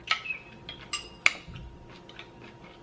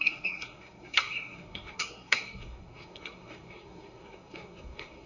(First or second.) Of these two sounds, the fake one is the second